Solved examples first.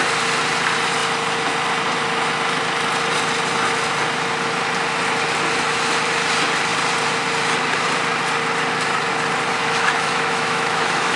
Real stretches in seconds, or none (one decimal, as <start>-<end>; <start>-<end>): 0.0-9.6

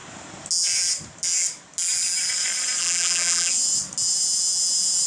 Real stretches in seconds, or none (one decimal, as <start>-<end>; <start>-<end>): 0.0-2.8; 3.5-5.1

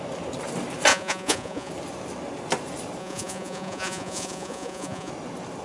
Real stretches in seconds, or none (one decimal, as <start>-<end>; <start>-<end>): 0.0-0.9; 1.7-3.0; 5.1-5.6

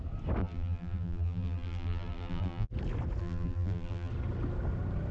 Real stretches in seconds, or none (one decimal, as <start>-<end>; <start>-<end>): 0.0-0.4; 2.7-3.2; 4.1-5.1